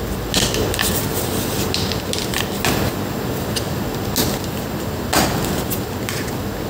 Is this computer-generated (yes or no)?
no